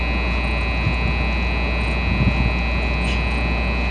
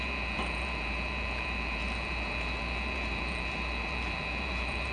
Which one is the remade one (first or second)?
second